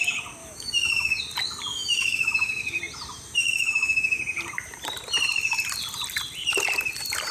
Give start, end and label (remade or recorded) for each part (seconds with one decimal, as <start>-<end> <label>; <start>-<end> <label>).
0.0-0.4 recorded; 0.4-1.2 remade; 1.2-1.7 recorded; 1.7-2.8 remade; 2.8-3.4 recorded; 3.4-4.2 remade; 4.2-7.3 recorded

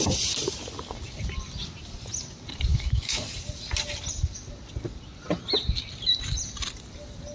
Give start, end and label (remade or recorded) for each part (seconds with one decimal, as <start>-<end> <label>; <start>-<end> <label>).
0.0-2.7 recorded; 2.7-3.2 remade; 3.2-7.3 recorded

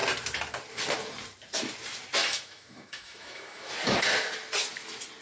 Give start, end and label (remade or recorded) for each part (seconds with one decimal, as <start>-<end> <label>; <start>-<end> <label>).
0.0-2.2 recorded; 2.2-3.7 remade; 3.7-5.2 recorded

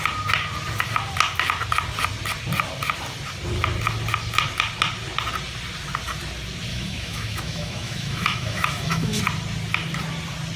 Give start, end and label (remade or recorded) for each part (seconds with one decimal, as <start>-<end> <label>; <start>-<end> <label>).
0.0-6.7 recorded; 6.7-9.2 remade; 9.2-10.6 recorded

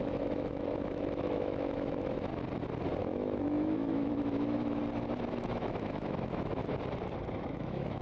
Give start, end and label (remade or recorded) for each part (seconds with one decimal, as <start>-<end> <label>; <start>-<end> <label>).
0.0-2.3 remade; 2.3-3.0 recorded; 3.0-4.8 remade; 4.8-5.3 recorded; 5.3-6.6 remade; 6.6-7.3 recorded; 7.3-8.0 remade

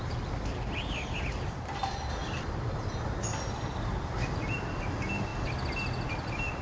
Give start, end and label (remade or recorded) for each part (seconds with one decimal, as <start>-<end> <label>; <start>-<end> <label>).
0.0-6.6 recorded

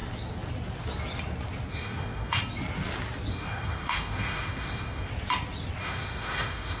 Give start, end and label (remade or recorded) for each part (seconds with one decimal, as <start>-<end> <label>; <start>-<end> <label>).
0.0-1.7 recorded; 1.7-2.4 remade; 2.4-3.3 recorded; 3.3-5.1 remade; 5.1-5.8 recorded; 5.8-6.8 remade